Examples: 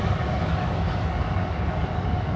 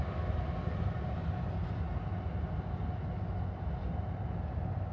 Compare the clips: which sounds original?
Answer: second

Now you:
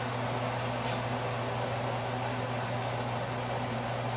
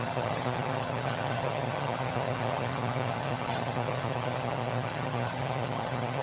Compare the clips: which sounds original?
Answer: first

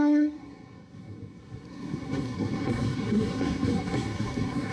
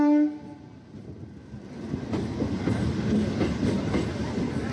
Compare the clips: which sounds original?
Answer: second